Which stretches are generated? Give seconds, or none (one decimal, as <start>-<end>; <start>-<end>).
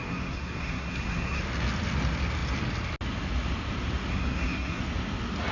0.0-1.4; 4.1-4.8